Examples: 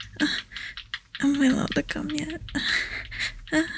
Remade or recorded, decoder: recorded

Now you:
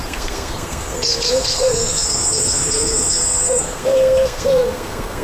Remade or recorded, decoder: remade, codec, SNAC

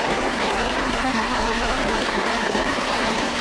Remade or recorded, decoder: remade, codec, SNAC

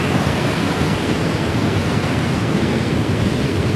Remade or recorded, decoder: remade, codec, SNAC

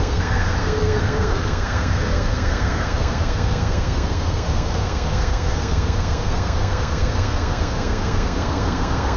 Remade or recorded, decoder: remade, codec, SNAC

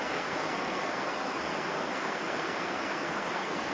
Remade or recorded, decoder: remade, codec, SNAC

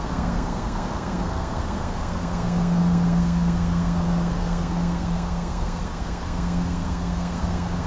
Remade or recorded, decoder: remade, codec, SNAC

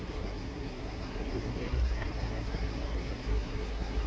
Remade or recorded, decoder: remade, codec, SNAC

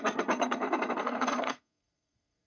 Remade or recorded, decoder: remade, codec, SNAC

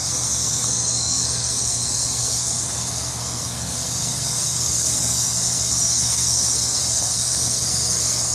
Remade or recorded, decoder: remade, codec, SNAC